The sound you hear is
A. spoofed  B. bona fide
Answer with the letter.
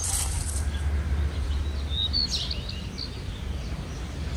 B